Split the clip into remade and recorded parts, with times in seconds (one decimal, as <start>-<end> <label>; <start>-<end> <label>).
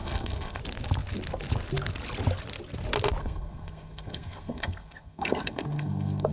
0.0-0.6 remade; 0.6-3.2 recorded; 3.2-6.3 remade